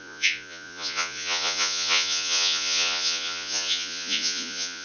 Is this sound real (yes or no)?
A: no